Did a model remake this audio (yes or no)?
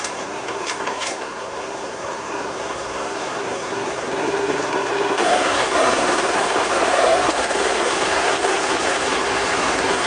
yes